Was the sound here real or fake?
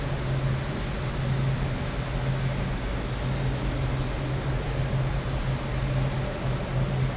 real